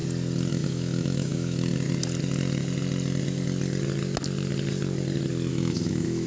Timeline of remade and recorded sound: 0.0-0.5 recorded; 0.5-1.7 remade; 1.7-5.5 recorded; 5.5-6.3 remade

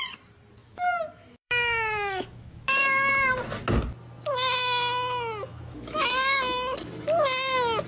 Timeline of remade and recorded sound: 0.0-0.6 recorded; 0.6-3.1 remade; 3.1-5.5 recorded; 5.5-6.1 remade; 6.1-7.9 recorded

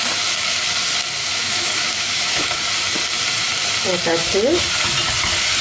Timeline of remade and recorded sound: 0.0-1.2 recorded; 1.2-2.6 remade; 2.6-5.6 recorded

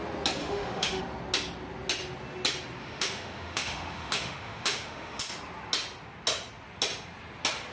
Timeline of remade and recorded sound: 0.0-0.4 recorded; 0.4-1.0 remade; 1.0-2.8 recorded; 2.8-5.2 remade; 5.2-7.7 recorded